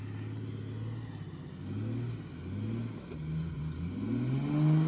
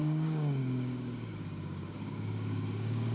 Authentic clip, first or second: first